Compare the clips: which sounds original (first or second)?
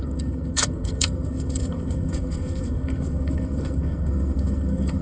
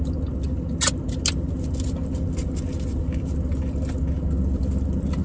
second